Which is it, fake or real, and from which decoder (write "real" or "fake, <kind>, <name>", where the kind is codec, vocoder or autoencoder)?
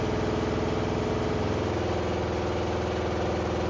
real